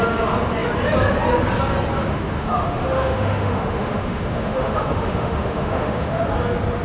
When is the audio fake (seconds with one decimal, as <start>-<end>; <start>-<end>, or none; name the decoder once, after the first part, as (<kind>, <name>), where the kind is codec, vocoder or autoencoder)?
2.1-6.2 (autoencoder, DAC-VAE)